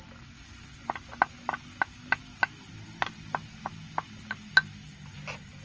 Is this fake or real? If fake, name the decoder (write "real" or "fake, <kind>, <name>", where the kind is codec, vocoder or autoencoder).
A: real